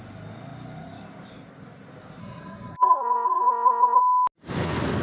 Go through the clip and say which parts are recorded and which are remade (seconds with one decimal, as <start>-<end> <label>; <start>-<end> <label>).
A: 0.0-2.2 recorded; 2.2-4.0 remade; 4.0-5.0 recorded